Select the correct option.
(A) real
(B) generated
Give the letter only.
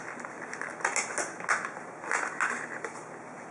A